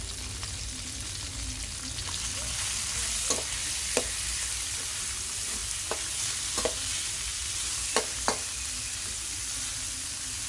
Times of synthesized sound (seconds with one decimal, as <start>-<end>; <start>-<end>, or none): none